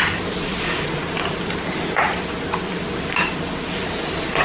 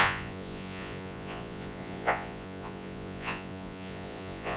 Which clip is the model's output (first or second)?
second